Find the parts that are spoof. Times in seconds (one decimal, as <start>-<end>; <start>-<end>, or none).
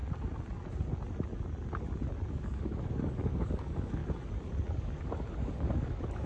2.3-4.0; 4.7-6.3